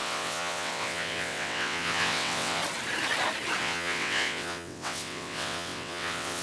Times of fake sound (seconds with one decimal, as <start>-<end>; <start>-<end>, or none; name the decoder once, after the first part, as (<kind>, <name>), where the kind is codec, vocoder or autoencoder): 0.0-2.6 (vocoder, WaveNeXt); 3.6-6.4